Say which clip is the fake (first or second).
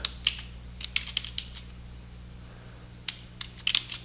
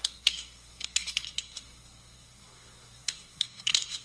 second